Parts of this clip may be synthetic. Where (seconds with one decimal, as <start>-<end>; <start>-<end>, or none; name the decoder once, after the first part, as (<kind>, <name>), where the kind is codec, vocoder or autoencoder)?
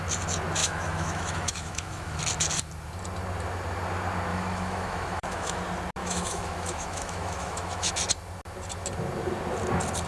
0.6-2.2 (autoencoder, DAC-VAE); 4.3-5.6; 6.0-7.9